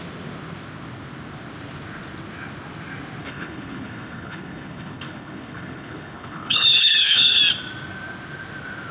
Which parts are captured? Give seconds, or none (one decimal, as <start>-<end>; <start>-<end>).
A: 0.0-3.2; 7.4-8.9